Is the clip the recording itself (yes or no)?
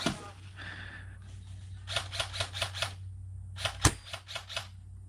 yes